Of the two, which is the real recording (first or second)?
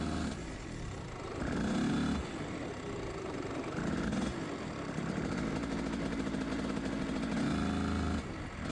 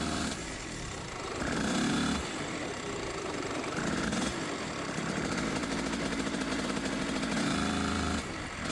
first